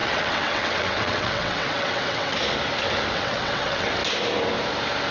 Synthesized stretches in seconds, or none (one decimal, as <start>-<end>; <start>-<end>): 0.0-2.3; 3.1-4.0